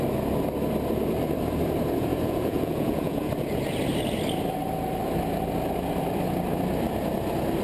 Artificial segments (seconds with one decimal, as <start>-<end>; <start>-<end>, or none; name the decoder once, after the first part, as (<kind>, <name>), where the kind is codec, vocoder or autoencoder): 2.1-3.3 (vocoder, Vocos)